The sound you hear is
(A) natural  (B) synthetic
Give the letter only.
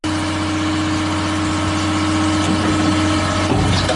A